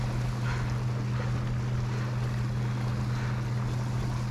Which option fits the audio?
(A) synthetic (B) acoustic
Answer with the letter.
B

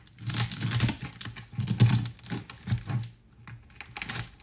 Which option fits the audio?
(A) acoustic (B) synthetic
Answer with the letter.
A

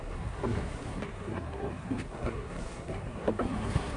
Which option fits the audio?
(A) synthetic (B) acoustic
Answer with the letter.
A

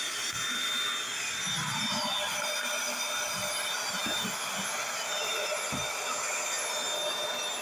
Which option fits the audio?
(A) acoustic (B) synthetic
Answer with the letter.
A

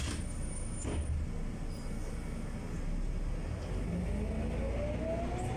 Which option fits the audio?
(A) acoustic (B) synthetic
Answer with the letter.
A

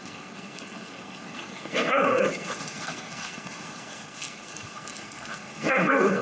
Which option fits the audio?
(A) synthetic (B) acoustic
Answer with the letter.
A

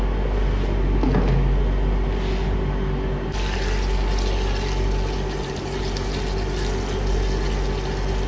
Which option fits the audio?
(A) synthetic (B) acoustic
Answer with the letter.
B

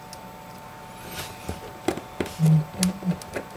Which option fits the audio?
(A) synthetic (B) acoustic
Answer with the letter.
B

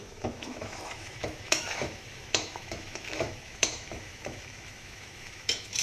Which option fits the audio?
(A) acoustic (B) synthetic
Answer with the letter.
B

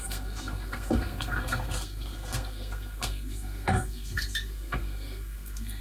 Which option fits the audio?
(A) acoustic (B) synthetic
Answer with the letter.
B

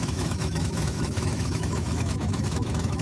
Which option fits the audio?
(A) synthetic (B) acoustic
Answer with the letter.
A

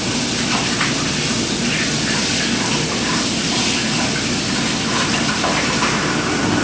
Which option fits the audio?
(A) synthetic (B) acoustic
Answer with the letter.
B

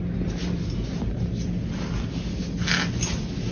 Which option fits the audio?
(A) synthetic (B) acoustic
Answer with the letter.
B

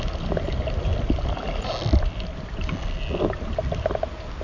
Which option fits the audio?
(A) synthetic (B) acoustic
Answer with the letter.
B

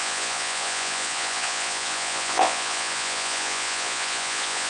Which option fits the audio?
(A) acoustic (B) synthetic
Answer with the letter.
B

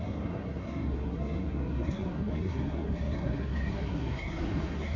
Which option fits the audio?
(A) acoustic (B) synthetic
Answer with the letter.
B